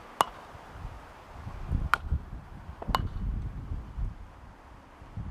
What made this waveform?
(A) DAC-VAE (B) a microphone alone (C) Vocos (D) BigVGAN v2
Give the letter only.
B